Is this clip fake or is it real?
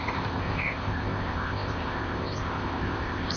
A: fake